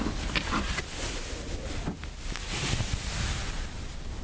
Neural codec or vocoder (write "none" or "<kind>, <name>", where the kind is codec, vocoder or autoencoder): none